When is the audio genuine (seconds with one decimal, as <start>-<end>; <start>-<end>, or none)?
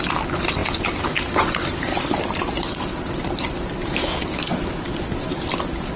0.0-6.0